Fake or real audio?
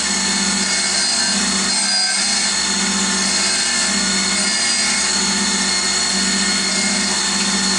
real